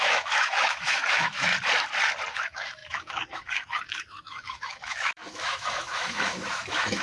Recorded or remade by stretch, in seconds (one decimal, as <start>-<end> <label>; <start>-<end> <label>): 0.0-1.5 remade; 1.5-2.3 recorded; 2.3-7.0 remade